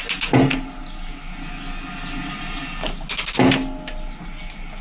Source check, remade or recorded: recorded